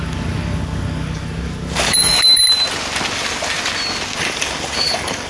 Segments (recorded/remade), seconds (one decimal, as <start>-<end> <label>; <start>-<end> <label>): 0.0-2.4 remade; 2.4-4.2 recorded; 4.2-5.3 remade